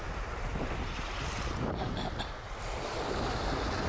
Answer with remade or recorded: recorded